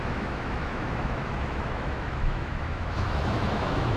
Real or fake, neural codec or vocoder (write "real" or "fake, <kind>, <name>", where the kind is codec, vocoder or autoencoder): fake, autoencoder, DAC-VAE